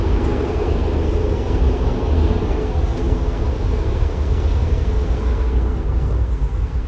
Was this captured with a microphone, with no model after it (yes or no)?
no